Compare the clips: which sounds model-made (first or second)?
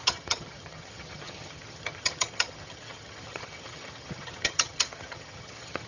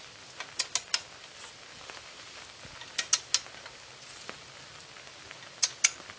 first